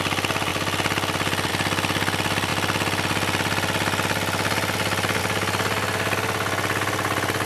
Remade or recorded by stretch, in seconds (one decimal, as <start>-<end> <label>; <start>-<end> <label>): 0.0-7.5 recorded